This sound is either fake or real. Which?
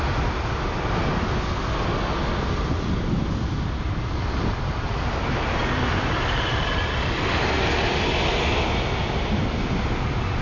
real